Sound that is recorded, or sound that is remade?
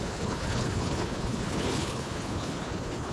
remade